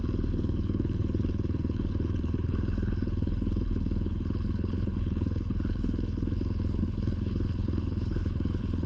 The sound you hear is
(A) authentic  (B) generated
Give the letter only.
B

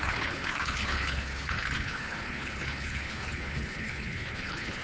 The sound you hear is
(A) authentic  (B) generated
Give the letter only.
B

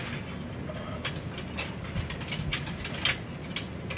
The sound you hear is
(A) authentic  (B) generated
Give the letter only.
A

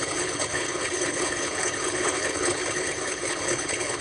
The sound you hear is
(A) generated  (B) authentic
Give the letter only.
A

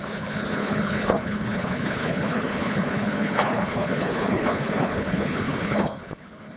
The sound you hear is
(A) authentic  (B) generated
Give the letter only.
B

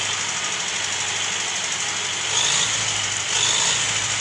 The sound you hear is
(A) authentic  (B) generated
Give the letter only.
A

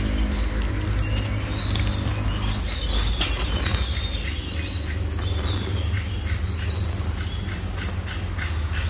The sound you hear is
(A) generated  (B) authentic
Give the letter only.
B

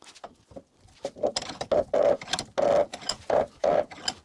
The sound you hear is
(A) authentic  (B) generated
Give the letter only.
A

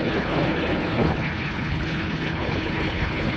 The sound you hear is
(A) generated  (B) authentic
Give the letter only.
A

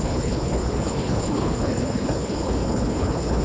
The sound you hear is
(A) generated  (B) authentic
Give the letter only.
A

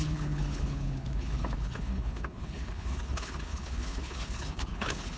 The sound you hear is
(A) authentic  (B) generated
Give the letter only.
B